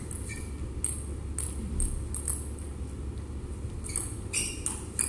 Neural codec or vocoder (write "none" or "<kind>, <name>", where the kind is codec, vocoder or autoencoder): none